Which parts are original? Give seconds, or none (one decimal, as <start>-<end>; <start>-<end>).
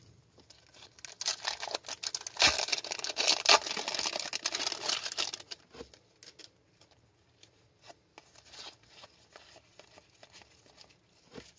0.0-11.6